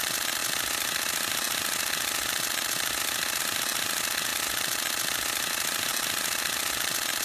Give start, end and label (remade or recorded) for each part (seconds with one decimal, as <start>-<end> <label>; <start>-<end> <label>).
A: 0.0-7.2 recorded